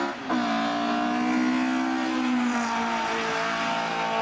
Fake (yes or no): no